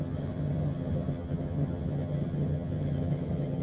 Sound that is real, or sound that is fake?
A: fake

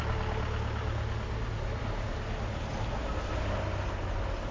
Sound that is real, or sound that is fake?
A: real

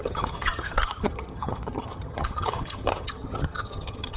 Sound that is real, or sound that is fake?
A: fake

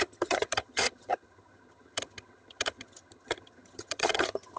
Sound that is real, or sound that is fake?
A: fake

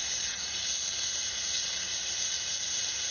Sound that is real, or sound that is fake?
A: real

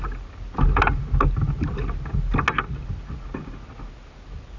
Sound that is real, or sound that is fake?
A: real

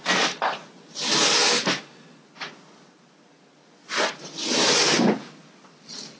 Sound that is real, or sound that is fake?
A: real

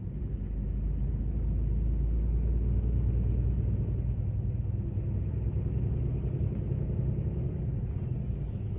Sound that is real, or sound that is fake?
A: real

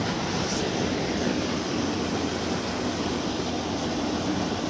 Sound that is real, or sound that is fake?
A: real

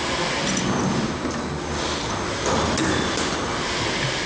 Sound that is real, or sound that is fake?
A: real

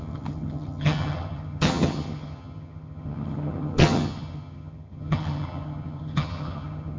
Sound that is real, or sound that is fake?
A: fake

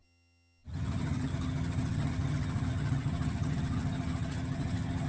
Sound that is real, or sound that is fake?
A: fake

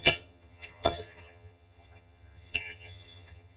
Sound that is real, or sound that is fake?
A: fake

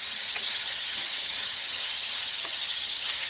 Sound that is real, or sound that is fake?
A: fake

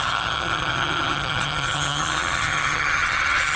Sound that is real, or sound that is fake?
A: fake